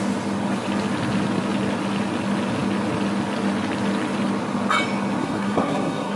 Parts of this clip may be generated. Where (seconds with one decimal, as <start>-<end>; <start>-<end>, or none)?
5.2-6.2